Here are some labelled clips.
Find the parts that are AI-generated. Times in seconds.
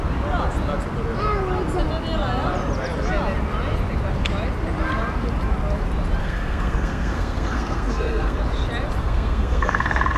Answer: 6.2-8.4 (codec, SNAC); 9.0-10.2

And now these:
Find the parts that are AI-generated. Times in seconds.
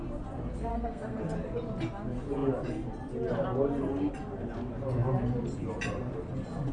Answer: 0.7-1.2 (codec, SNAC)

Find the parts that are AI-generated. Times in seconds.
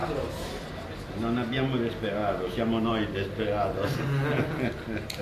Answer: none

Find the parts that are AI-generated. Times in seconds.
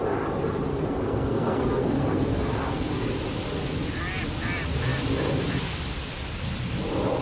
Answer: 0.7-2.9 (codec, SNAC)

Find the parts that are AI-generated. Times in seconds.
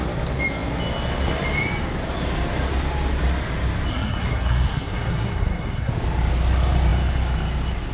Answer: 3.9-5.9 (codec, SNAC)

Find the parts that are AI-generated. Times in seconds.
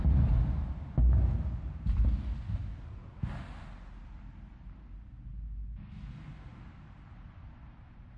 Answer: none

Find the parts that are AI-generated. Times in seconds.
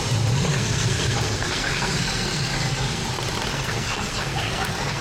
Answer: 0.5-3.0 (codec, SNAC); 3.5-5.0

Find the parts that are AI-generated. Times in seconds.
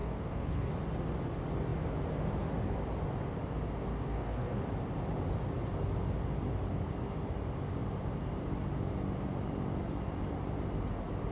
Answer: 0.0-0.7 (codec, SNAC); 3.9-4.6